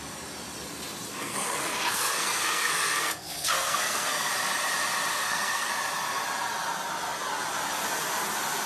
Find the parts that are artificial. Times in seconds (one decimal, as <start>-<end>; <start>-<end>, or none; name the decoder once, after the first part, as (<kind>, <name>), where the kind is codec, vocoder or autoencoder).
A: 1.1-4.3 (codec, SNAC); 5.1-5.7